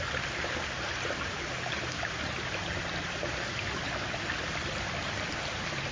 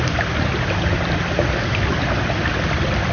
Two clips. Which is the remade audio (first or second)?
second